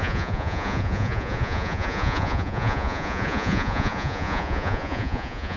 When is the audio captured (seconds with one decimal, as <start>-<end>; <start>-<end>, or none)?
none